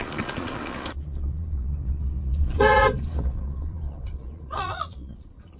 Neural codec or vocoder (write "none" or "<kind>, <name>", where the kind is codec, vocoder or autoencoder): vocoder, Vocos